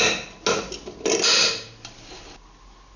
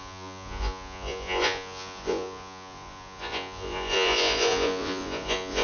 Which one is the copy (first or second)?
second